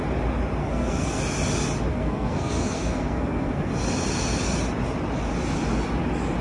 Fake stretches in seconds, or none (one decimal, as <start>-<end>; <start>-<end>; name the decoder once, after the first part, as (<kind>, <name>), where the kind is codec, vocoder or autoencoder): 0.6-1.2 (codec, SNAC); 1.9-3.7